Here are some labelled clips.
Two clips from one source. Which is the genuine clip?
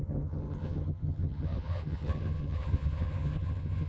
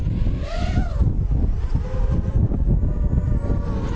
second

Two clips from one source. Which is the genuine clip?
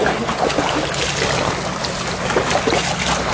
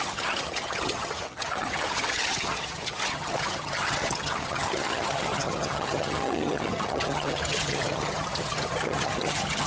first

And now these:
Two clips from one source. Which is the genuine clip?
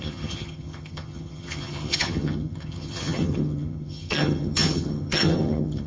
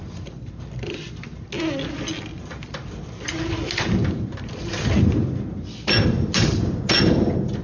second